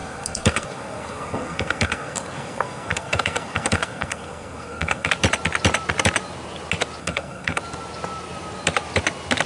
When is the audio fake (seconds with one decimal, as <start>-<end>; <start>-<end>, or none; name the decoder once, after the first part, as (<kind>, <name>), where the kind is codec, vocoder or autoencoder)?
0.0-5.1 (codec, SNAC); 7.0-7.6